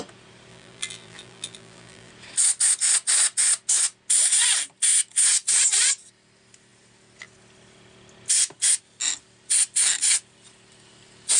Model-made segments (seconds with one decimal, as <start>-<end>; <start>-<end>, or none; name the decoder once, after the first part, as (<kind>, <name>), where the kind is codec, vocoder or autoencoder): 0.5-2.1 (vocoder, BigVGAN v2)